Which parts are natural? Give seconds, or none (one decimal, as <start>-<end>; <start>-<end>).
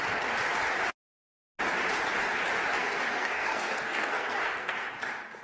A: 0.0-2.7; 4.9-5.4